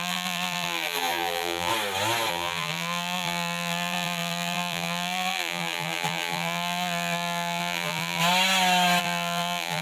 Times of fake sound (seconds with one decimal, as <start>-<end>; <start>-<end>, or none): 0.0-1.7; 2.3-8.2; 9.0-9.8